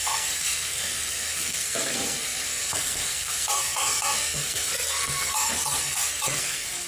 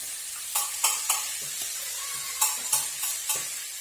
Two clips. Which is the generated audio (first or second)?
first